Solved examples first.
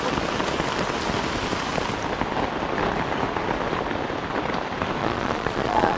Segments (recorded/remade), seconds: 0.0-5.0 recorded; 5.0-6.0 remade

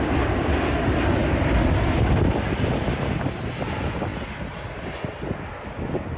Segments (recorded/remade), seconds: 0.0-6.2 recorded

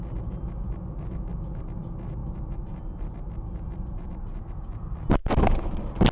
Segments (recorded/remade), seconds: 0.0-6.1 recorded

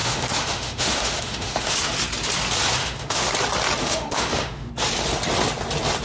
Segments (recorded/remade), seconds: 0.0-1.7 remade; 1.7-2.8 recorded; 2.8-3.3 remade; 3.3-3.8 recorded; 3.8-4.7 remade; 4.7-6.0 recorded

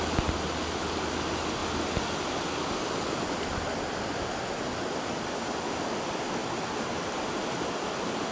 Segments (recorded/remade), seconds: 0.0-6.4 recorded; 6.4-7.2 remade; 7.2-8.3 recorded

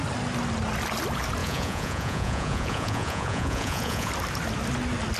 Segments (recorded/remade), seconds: 0.0-1.4 recorded; 1.4-4.1 remade; 4.1-5.2 recorded

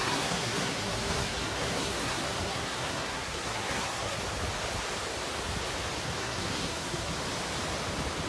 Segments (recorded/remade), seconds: 0.0-4.2 remade; 4.2-6.2 recorded; 6.2-7.1 remade; 7.1-8.3 recorded

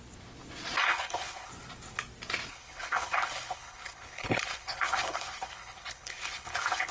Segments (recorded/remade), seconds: 0.0-0.8 recorded; 0.8-1.5 remade; 1.5-2.5 recorded; 2.5-6.9 remade